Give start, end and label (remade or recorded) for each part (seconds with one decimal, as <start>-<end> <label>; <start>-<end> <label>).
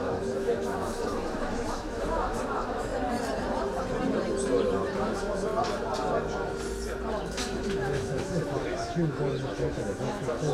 0.0-2.9 remade; 2.9-5.0 recorded; 5.0-5.5 remade; 5.5-7.1 recorded; 7.1-10.5 remade